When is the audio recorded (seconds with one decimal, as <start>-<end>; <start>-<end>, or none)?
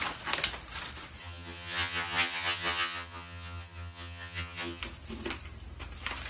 0.0-1.2; 4.8-6.3